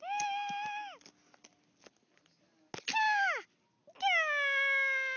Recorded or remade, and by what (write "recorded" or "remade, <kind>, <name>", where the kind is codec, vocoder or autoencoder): recorded